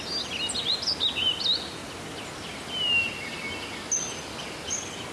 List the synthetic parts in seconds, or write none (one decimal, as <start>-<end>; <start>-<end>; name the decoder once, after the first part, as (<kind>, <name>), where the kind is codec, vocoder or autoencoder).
none